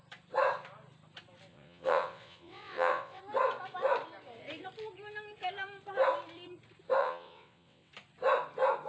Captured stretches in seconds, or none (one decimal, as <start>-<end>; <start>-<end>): 0.0-1.5; 3.2-7.0; 7.9-8.9